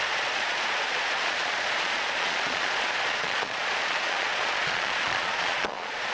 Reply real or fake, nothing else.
fake